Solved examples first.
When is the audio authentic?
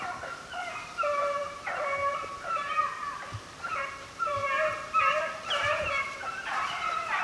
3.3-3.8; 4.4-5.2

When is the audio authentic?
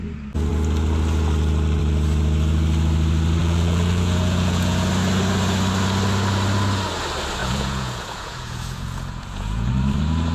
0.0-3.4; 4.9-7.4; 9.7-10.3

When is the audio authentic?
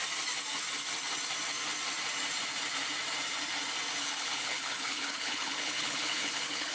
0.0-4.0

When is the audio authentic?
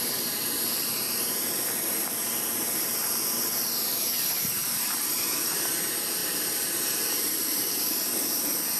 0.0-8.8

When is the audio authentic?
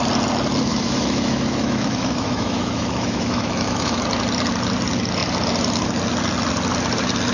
0.0-0.7; 4.0-7.3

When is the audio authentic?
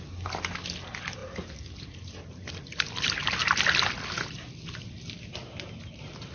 0.0-6.3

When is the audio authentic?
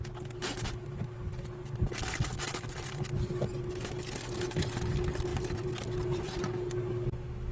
0.0-1.9; 3.4-5.3; 6.4-7.5